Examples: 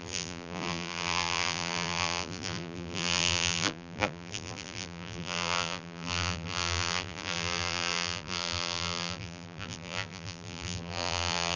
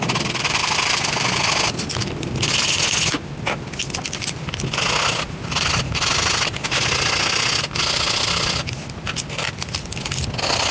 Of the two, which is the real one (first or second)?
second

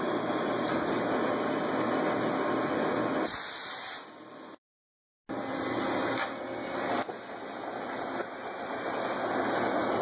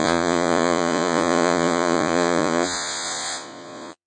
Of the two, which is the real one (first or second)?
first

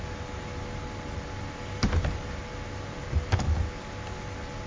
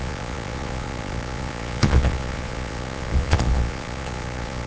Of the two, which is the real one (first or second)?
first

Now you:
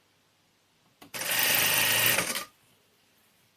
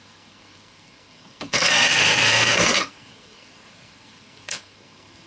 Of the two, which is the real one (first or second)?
first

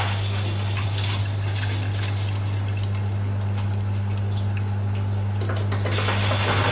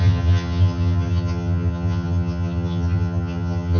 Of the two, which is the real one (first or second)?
first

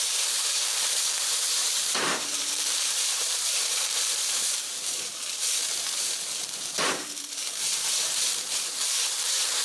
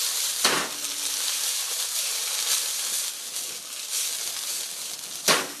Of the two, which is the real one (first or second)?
second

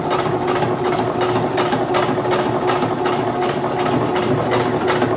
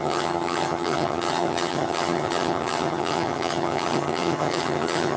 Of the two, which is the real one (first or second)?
first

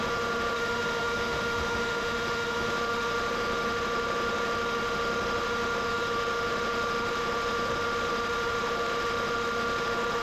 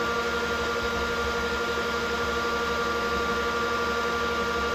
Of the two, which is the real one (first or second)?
second